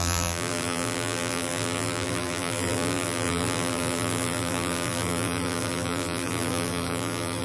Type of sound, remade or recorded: remade